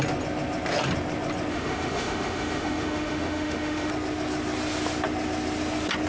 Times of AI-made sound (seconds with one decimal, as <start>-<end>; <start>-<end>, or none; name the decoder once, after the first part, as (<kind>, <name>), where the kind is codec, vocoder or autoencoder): 1.5-3.9 (autoencoder, DAC-VAE)

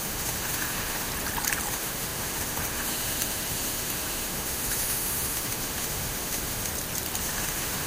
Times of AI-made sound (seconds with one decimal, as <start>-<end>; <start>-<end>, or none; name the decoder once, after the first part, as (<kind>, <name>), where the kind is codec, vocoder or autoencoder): 0.0-1.1 (autoencoder, DAC-VAE); 1.7-6.7; 7.2-7.9

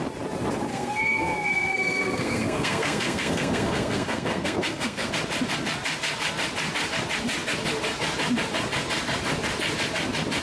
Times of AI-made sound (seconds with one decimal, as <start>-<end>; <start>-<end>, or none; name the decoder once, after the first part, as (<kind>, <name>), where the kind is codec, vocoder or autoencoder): 0.7-5.1 (codec, SNAC)

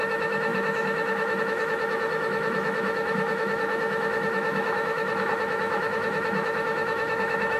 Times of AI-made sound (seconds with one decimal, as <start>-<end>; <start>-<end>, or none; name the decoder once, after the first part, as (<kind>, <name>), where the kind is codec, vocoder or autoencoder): 0.0-7.6 (autoencoder, DAC-VAE)

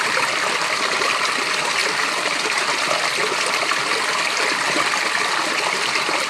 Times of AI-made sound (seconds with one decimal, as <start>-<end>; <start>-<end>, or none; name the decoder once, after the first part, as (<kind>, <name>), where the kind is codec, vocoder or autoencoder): none